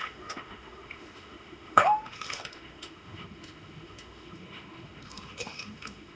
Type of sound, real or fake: fake